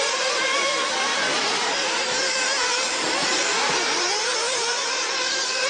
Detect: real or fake fake